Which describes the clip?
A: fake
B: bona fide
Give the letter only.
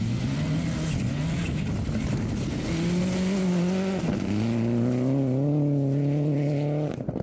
B